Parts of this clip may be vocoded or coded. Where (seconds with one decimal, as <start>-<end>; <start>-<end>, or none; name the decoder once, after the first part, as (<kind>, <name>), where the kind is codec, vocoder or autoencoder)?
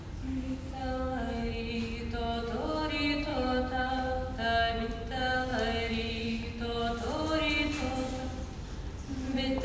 0.8-1.5 (autoencoder, DAC-VAE); 3.3-3.9